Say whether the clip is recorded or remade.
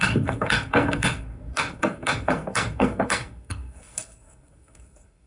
remade